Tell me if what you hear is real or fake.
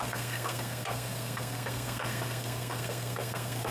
fake